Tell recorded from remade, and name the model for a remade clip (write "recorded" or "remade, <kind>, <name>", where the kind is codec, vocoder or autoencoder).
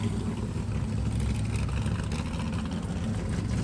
recorded